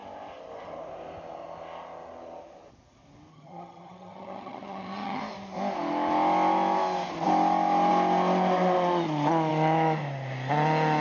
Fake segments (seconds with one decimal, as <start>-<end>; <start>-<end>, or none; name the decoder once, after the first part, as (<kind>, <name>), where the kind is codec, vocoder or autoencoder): 3.3-5.2 (vocoder, HiFi-GAN)